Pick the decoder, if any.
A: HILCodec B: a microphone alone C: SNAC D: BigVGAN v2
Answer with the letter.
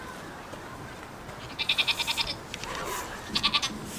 B